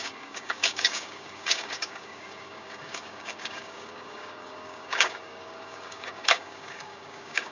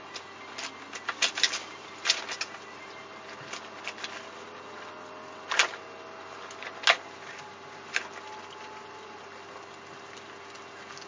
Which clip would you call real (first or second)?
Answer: second